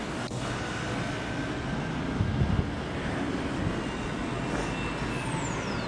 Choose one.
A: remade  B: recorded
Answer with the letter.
B